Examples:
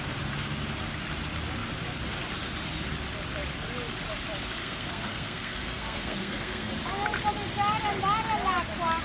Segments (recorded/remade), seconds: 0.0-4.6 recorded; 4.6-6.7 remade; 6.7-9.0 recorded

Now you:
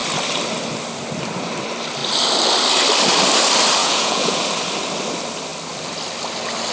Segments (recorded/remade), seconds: 0.0-3.8 recorded; 3.8-4.4 remade; 4.4-6.7 recorded

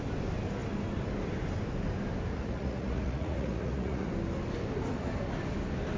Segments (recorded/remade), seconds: 0.0-2.3 recorded; 2.3-4.1 remade; 4.1-6.0 recorded

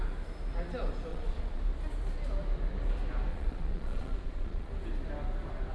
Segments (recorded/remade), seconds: 0.0-1.1 recorded; 1.1-1.6 remade; 1.6-3.3 recorded; 3.3-4.7 remade; 4.7-5.7 recorded

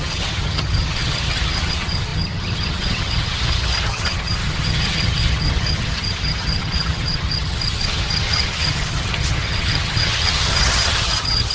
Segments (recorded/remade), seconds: 0.0-11.5 remade

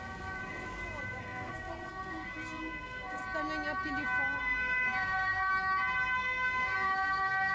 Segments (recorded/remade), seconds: 0.0-0.4 remade; 0.4-1.2 recorded; 1.2-3.2 remade; 3.2-4.4 recorded; 4.4-5.5 remade; 5.5-6.2 recorded; 6.2-7.5 remade

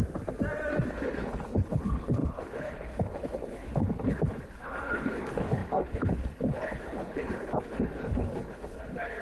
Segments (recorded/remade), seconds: 0.0-0.9 recorded; 0.9-9.2 remade

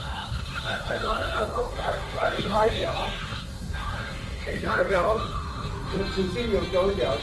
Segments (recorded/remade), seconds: 0.0-6.0 remade; 6.0-7.2 recorded